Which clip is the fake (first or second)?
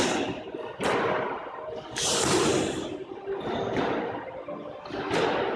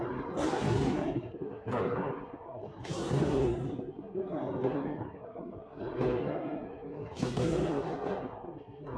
second